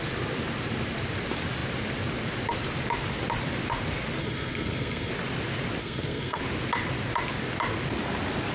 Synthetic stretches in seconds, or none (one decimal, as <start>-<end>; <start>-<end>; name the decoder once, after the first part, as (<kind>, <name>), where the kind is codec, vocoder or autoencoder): 4.2-5.1 (codec, SNAC); 5.8-6.4